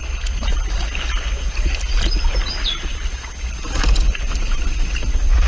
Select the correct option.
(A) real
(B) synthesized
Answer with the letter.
A